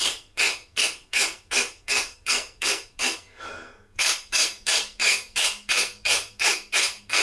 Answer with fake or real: fake